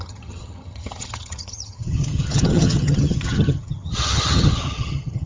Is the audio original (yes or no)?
no